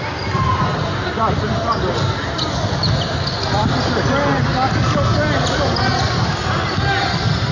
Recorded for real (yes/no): yes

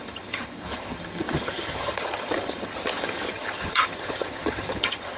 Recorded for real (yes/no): no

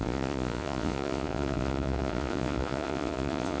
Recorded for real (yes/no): no